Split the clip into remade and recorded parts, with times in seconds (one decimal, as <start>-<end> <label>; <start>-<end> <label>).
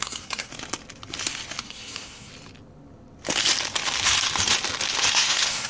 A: 0.0-0.5 remade; 0.5-1.6 recorded; 1.6-2.3 remade; 2.3-5.1 recorded; 5.1-5.7 remade